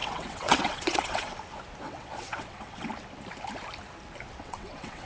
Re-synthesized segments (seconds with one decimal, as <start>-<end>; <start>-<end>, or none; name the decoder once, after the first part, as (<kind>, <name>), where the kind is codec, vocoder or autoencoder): 0.0-1.3 (vocoder, WaveNeXt); 1.8-2.9; 4.4-5.1